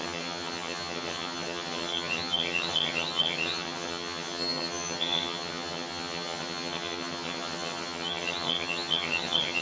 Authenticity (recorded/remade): remade